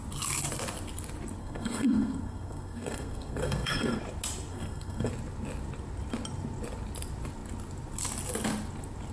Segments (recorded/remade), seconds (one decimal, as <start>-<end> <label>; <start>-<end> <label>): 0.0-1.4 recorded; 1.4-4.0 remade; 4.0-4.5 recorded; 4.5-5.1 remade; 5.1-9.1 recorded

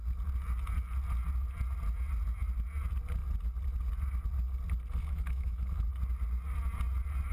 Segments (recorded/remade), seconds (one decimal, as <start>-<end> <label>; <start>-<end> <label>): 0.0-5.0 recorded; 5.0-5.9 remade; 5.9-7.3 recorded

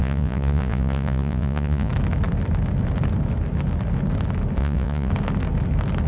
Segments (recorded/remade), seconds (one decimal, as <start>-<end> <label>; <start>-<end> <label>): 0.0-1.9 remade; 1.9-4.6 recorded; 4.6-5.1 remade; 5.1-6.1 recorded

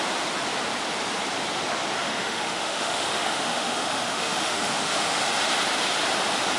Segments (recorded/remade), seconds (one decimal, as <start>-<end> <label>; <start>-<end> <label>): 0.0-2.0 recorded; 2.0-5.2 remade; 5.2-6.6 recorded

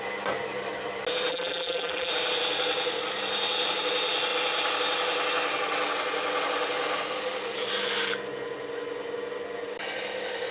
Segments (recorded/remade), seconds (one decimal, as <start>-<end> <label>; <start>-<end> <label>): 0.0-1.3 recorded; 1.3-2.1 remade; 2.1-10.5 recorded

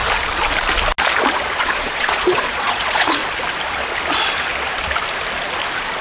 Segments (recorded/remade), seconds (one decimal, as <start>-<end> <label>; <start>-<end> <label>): 0.0-1.6 recorded; 1.6-3.2 remade; 3.2-6.0 recorded

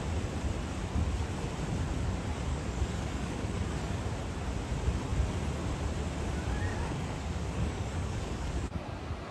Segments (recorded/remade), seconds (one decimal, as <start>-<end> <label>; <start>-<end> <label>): 0.0-2.5 recorded; 2.5-4.0 remade; 4.0-6.7 recorded; 6.7-8.8 remade; 8.8-9.3 recorded

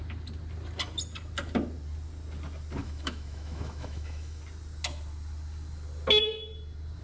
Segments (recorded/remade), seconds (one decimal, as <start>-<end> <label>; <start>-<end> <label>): 0.0-2.8 recorded; 2.8-4.4 remade; 4.4-7.0 recorded